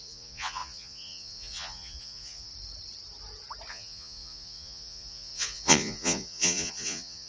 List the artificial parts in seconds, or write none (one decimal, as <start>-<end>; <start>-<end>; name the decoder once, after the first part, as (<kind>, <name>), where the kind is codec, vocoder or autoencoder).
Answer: 0.0-2.5 (vocoder, Vocos); 3.7-7.3